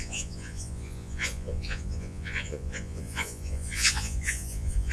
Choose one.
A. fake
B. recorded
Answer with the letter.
A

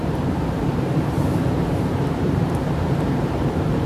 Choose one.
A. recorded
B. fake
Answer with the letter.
B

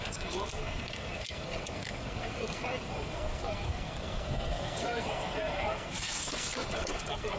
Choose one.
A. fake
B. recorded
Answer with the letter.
A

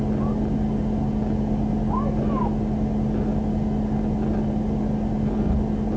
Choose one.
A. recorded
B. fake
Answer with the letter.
A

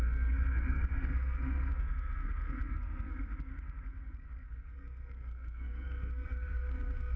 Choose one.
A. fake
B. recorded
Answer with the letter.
A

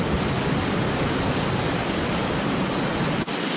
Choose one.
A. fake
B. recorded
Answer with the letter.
B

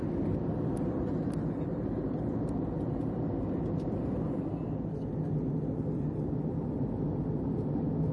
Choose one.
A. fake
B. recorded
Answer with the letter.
B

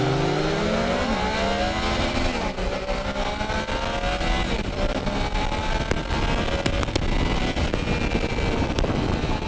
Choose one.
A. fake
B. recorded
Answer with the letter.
B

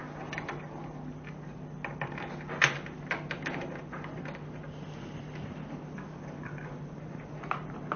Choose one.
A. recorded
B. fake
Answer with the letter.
A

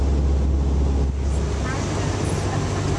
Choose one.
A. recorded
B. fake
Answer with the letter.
A